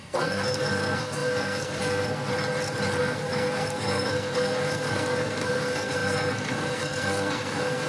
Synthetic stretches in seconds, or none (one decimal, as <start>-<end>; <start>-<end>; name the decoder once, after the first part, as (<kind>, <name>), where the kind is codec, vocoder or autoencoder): 0.0-2.3 (codec, SNAC); 3.0-7.9

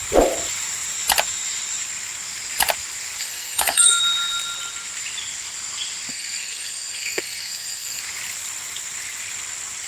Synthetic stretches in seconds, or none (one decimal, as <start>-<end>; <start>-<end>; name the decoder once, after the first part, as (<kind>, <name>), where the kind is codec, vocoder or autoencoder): 3.2-4.0 (codec, SNAC); 6.1-8.0